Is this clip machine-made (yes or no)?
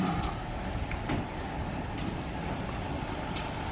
no